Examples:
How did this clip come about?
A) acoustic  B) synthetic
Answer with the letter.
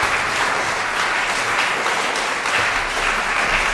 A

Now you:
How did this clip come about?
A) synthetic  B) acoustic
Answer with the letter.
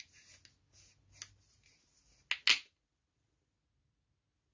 B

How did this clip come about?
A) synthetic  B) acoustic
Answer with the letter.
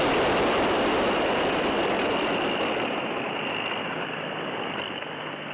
B